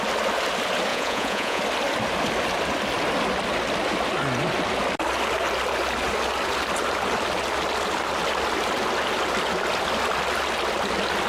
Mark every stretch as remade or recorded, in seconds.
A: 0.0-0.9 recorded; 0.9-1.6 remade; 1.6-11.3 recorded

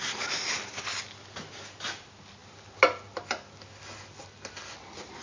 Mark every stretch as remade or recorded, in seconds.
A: 0.0-5.2 recorded

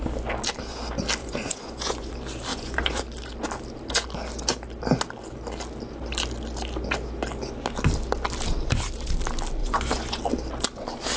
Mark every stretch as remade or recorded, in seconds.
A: 0.0-1.2 recorded; 1.2-2.1 remade; 2.1-2.5 recorded; 2.5-3.0 remade; 3.0-9.6 recorded; 9.6-10.2 remade; 10.2-11.2 recorded

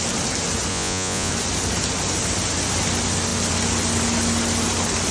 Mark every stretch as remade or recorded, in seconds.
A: 0.0-0.7 recorded; 0.7-1.3 remade; 1.3-5.1 recorded

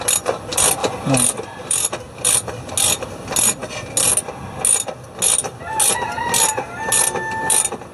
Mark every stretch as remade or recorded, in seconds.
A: 0.0-0.8 recorded; 0.8-2.7 remade; 2.7-7.9 recorded

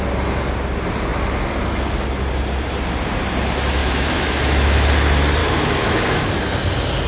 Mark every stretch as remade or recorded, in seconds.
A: 0.0-3.8 recorded; 3.8-4.9 remade; 4.9-5.4 recorded; 5.4-6.3 remade; 6.3-7.1 recorded

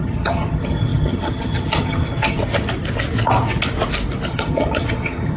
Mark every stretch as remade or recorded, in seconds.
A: 0.0-2.4 remade; 2.4-4.3 recorded; 4.3-5.4 remade